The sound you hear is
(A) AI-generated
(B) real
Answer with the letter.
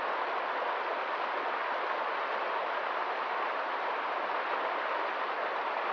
B